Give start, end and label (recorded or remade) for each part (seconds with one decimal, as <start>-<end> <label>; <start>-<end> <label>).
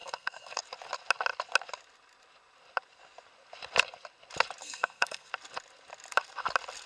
0.0-0.6 remade; 0.6-4.6 recorded; 4.6-5.3 remade; 5.3-6.9 recorded